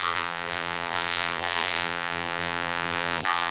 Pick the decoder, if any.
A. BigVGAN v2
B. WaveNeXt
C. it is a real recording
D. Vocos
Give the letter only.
A